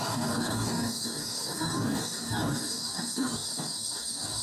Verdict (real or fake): fake